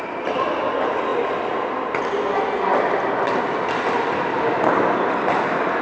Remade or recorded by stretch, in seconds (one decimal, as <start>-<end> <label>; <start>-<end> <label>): 0.0-5.8 recorded

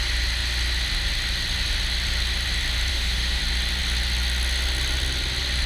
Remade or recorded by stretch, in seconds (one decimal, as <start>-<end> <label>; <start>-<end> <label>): 0.0-2.9 recorded; 2.9-3.4 remade; 3.4-5.7 recorded

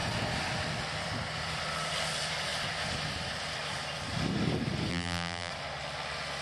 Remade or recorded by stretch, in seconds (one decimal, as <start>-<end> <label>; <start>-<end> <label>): 0.0-4.9 recorded; 4.9-5.5 remade; 5.5-6.4 recorded

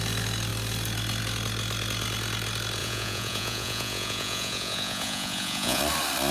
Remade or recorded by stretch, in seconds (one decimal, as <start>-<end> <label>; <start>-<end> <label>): 0.0-2.8 recorded; 2.8-5.8 remade; 5.8-6.3 recorded